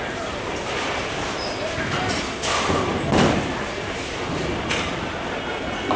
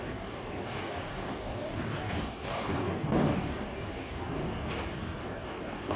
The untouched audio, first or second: first